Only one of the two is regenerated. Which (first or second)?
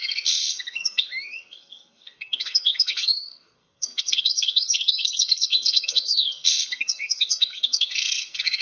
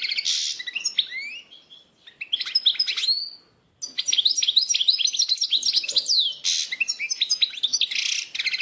first